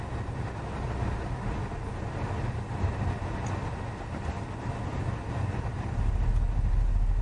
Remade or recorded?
recorded